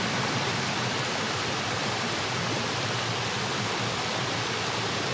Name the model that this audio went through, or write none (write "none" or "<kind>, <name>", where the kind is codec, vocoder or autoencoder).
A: none